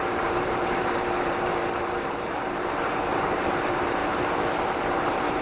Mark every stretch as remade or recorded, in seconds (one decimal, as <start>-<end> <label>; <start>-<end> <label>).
0.0-5.4 remade